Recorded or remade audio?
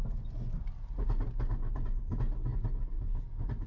recorded